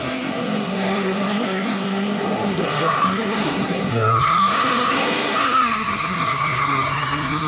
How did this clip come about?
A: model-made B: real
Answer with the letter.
A